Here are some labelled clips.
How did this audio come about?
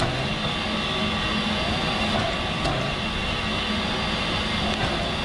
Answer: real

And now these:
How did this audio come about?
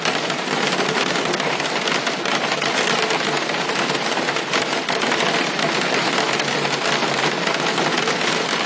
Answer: real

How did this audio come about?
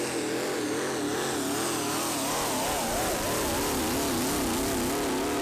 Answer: real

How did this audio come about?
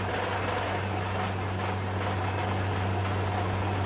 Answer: real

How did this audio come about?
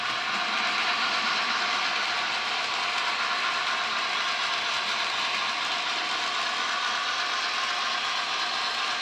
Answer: real